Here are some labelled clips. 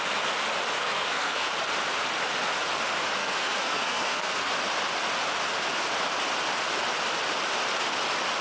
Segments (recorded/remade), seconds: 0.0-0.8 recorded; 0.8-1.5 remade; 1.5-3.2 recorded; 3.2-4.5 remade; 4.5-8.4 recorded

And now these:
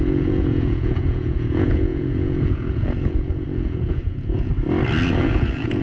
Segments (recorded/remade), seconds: 0.0-4.5 remade; 4.5-5.2 recorded; 5.2-5.8 remade